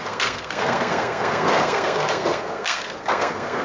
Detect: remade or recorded remade